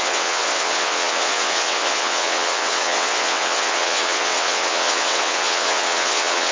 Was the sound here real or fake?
fake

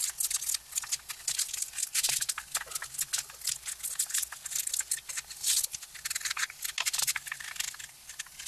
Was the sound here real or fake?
real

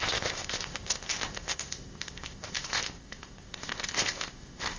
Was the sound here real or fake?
fake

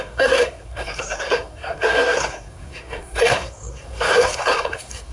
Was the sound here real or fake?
fake